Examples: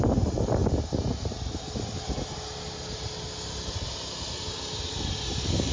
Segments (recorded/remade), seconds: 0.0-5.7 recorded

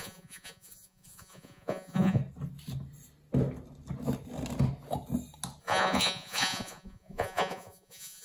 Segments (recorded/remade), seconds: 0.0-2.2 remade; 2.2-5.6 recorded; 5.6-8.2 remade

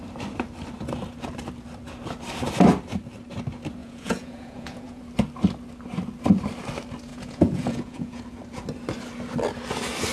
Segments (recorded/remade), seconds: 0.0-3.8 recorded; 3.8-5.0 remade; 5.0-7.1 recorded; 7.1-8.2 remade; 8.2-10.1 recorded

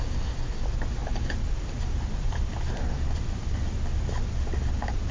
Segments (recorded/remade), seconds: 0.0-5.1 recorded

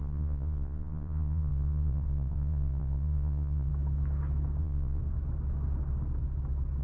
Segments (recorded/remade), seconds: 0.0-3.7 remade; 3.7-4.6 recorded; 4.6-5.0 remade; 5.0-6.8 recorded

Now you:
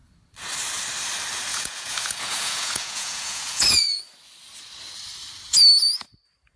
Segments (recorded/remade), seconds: 0.0-1.5 recorded; 1.5-4.0 remade; 4.0-6.6 recorded

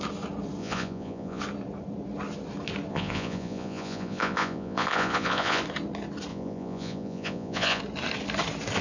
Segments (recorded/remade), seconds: 0.0-0.6 recorded; 0.6-1.4 remade; 1.4-2.9 recorded; 2.9-5.6 remade; 5.6-6.3 recorded; 6.3-7.8 remade; 7.8-8.8 recorded

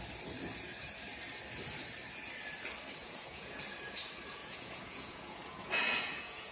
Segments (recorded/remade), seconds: 0.0-3.0 recorded; 3.0-3.6 remade; 3.6-4.4 recorded; 4.4-6.5 remade